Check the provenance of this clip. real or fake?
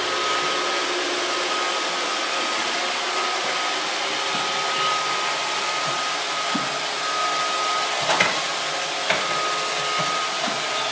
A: real